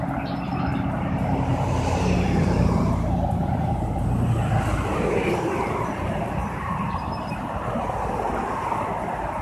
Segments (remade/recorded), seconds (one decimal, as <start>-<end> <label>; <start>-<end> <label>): 0.0-0.7 recorded; 0.7-3.9 remade; 3.9-6.4 recorded; 6.4-8.3 remade; 8.3-9.4 recorded